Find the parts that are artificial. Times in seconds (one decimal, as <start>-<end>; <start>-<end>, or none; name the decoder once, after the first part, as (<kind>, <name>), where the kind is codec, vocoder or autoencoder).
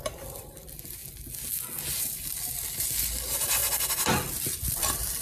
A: 0.0-1.0 (vocoder, BigVGAN v2); 2.0-3.6; 4.7-5.2